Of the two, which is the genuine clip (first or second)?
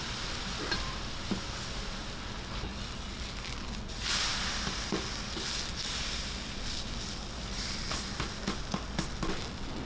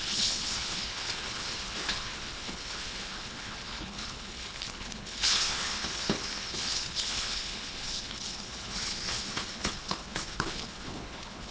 first